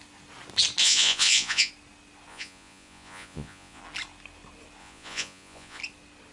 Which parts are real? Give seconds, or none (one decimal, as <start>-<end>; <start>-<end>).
0.0-0.8; 1.7-2.3; 3.8-4.8; 5.8-6.3